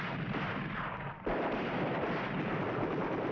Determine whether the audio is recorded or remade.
recorded